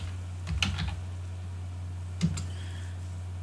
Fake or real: real